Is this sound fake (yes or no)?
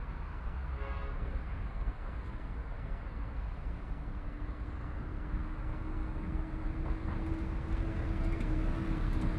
yes